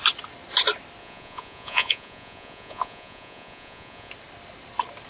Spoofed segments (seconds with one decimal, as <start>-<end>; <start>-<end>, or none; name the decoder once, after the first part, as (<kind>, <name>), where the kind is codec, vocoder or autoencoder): 1.0-4.1 (vocoder, Vocos)